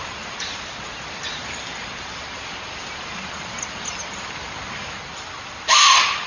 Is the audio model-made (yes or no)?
no